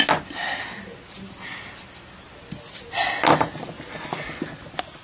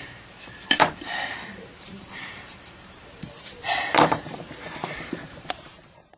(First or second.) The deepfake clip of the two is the second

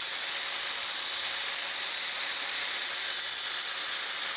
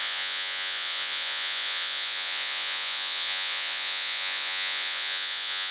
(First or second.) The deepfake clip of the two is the second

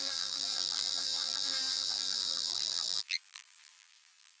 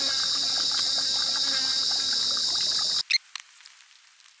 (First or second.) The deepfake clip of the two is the first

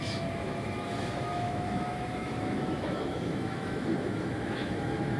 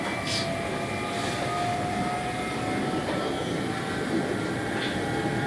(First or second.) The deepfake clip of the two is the first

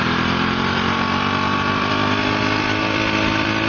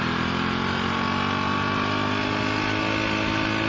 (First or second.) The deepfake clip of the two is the first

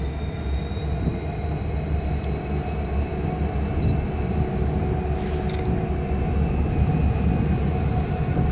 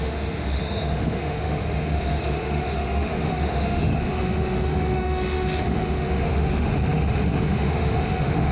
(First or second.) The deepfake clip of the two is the second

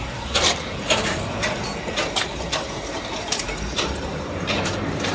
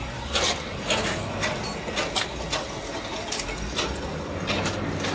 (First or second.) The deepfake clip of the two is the first